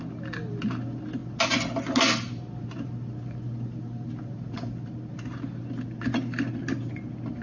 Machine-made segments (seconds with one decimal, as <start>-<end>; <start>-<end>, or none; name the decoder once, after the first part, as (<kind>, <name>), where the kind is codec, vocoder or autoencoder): none